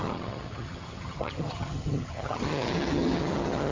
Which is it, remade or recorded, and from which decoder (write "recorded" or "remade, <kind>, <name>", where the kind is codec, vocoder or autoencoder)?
remade, vocoder, HiFi-GAN